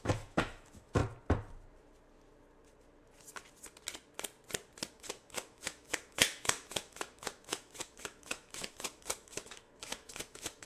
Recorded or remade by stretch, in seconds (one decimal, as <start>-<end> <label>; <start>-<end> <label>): 0.0-1.0 remade; 1.0-4.9 recorded; 4.9-10.7 remade